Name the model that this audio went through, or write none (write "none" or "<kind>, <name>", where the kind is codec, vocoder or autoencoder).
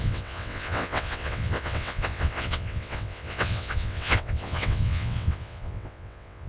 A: vocoder, WaveNeXt